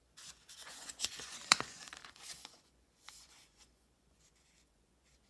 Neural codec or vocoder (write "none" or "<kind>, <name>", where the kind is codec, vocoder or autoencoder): vocoder, Vocos